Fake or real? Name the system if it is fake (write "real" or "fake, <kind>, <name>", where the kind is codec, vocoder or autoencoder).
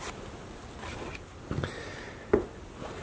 real